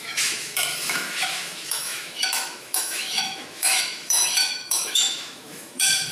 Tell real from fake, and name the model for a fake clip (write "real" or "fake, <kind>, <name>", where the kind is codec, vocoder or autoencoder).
fake, autoencoder, DAC-VAE